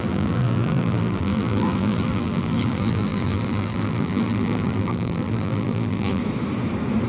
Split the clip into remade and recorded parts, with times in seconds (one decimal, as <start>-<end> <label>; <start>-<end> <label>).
0.0-6.2 remade; 6.2-7.1 recorded